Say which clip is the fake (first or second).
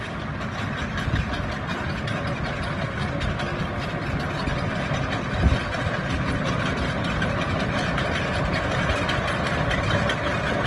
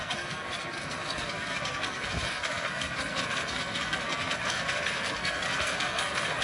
second